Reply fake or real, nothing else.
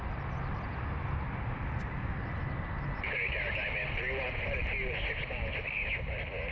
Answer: real